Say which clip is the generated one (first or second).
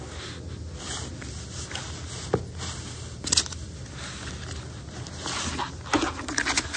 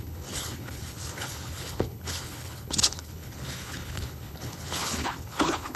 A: second